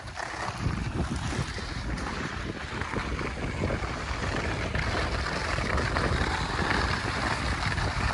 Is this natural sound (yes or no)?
yes